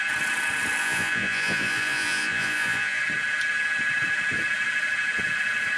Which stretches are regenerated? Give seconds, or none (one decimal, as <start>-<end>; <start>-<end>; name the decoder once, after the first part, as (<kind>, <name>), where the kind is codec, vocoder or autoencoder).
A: 0.8-3.0 (vocoder, Vocos)